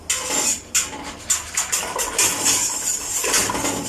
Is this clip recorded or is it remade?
recorded